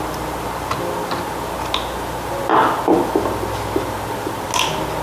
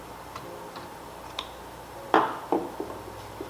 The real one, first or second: first